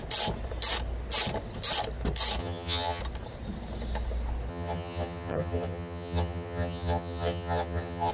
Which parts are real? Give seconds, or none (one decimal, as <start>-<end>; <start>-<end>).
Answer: 0.0-2.4; 3.0-4.5